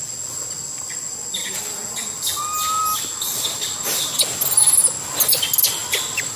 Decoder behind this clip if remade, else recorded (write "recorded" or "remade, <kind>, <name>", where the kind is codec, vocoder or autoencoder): recorded